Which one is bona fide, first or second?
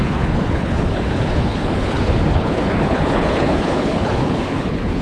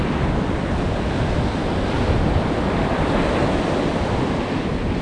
second